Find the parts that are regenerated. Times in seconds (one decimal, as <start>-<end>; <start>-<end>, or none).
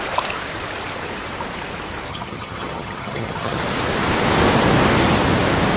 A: 2.1-3.6